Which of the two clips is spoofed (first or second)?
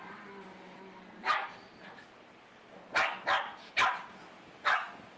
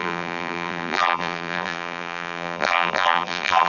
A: second